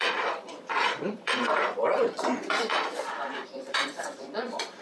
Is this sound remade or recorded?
remade